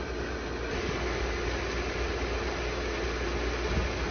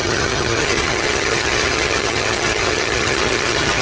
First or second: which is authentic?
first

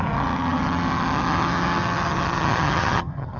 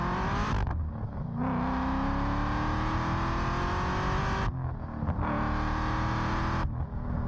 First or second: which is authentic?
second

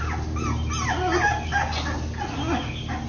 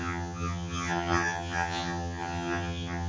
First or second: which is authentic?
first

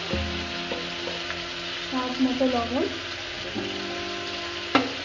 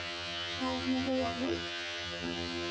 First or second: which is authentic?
first